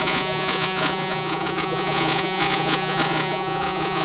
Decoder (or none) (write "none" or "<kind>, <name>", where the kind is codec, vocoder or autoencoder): vocoder, Vocos